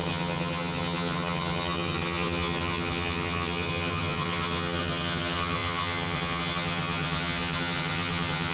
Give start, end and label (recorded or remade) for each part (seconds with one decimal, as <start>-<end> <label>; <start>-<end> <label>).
0.0-8.5 remade